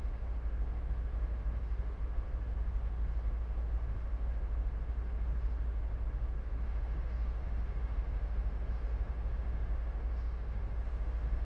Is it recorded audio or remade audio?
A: remade